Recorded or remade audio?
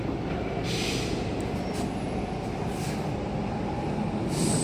recorded